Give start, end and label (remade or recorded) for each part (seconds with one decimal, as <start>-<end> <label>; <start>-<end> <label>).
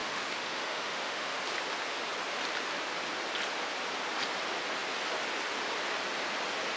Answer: 0.0-1.4 remade; 1.4-6.8 recorded